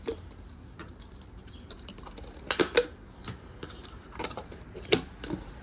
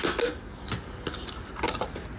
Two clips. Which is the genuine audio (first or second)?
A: second